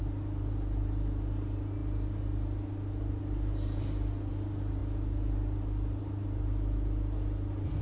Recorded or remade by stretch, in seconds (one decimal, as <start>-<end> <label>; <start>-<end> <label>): 0.0-7.8 recorded